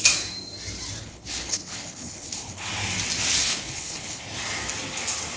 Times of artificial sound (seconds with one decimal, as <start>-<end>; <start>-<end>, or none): 1.0-2.7; 3.4-4.2